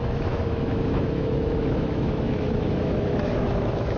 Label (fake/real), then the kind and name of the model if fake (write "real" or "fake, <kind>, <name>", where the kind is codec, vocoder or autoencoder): fake, autoencoder, DAC-VAE